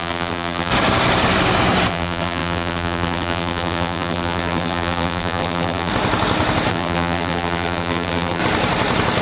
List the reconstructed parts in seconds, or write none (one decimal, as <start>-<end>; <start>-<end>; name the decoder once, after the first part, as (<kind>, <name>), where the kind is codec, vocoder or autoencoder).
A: 0.0-0.7 (vocoder, BigVGAN v2); 1.9-5.9; 6.7-8.4